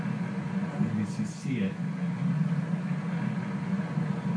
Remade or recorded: recorded